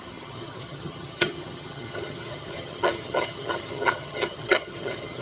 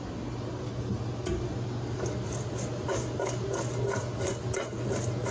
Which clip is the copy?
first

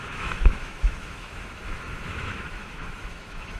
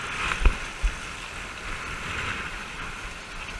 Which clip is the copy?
first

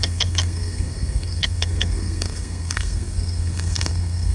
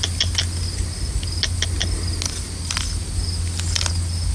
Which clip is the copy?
first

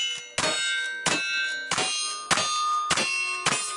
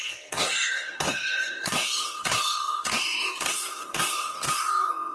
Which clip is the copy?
second